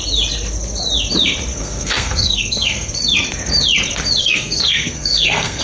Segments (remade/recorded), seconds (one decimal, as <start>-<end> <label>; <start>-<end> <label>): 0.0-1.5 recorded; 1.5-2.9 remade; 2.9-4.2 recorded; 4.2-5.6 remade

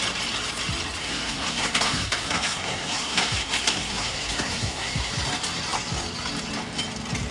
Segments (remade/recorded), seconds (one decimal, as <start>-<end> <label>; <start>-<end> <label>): 0.0-1.0 recorded; 1.0-5.1 remade; 5.1-7.3 recorded

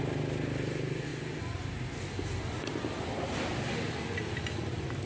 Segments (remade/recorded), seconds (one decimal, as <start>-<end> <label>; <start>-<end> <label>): 0.0-5.1 recorded

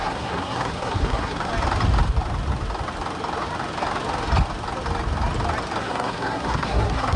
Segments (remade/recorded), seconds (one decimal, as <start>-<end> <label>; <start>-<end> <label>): 0.0-1.5 remade; 1.5-5.8 recorded; 5.8-7.2 remade

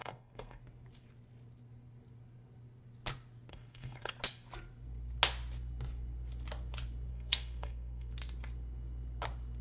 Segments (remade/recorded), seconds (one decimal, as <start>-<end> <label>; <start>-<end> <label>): 0.0-0.6 remade; 0.6-3.5 recorded; 3.5-4.1 remade; 4.1-7.1 recorded; 7.1-8.1 remade; 8.1-9.6 recorded

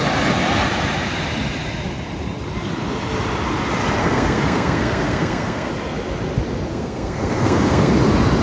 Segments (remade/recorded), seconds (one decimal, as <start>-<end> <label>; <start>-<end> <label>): 0.0-4.0 recorded; 4.0-5.7 remade; 5.7-6.7 recorded; 6.7-7.9 remade; 7.9-8.4 recorded

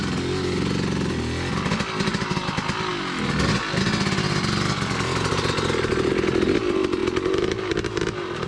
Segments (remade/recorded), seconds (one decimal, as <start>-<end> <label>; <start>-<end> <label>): 0.0-8.5 recorded

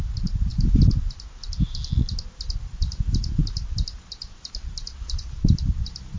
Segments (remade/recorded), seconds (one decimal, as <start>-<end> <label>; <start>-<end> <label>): 0.0-6.2 recorded